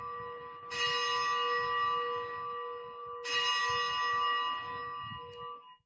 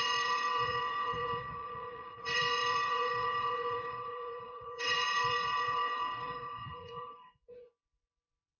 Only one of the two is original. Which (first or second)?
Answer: first